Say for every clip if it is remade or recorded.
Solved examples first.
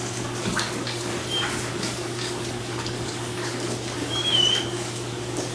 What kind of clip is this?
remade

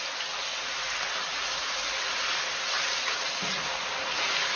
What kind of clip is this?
recorded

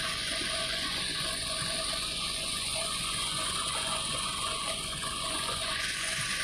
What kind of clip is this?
remade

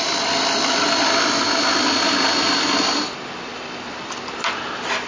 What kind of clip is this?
recorded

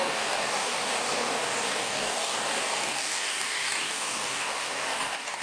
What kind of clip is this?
remade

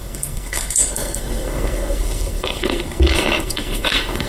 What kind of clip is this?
remade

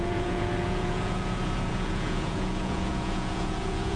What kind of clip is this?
remade